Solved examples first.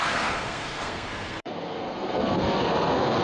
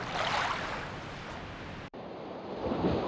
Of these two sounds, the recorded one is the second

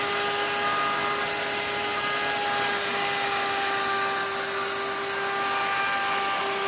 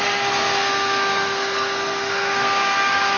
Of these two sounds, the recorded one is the first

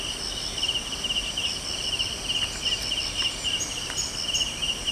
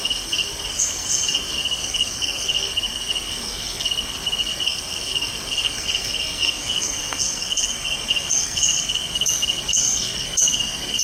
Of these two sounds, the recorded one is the first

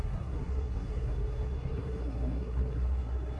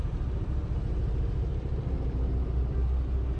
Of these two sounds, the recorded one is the second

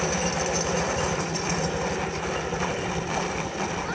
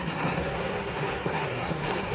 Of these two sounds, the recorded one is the first